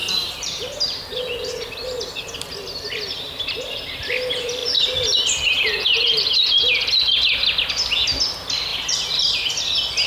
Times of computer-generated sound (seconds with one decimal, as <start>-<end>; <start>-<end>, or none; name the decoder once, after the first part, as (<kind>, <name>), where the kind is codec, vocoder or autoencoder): 0.0-2.3 (vocoder, BigVGAN v2); 8.7-9.5